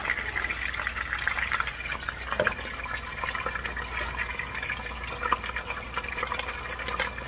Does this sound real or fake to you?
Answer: real